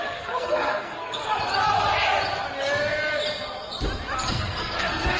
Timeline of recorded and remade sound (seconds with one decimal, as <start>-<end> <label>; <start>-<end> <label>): 0.0-1.2 remade; 1.2-4.3 recorded; 4.3-5.2 remade